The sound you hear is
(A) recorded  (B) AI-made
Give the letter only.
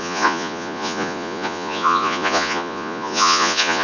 B